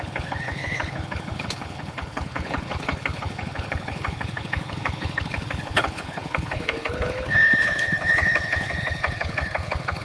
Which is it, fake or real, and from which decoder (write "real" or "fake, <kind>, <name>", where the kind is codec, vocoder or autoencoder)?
fake, codec, HILCodec